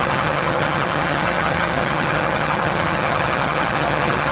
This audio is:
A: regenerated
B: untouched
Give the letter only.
A